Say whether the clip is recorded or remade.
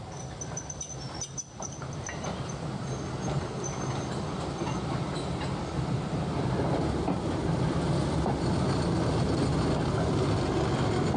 recorded